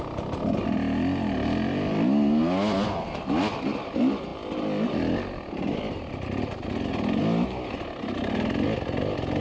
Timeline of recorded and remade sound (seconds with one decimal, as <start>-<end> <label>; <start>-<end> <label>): 0.0-9.4 recorded